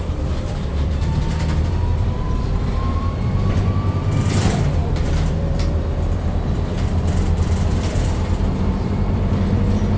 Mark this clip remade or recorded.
remade